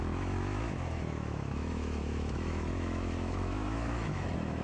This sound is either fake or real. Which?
fake